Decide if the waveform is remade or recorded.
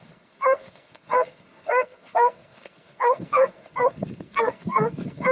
remade